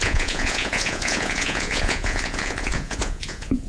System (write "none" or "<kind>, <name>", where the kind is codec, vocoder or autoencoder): vocoder, Vocos